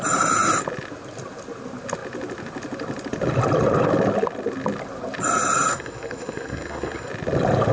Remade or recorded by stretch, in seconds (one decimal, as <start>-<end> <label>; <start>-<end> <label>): 0.0-5.7 recorded; 5.7-7.1 remade; 7.1-7.7 recorded